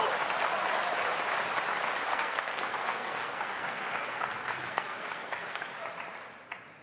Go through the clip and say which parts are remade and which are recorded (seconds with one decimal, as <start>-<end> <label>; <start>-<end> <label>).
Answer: 0.0-2.1 recorded; 2.1-5.7 remade; 5.7-6.8 recorded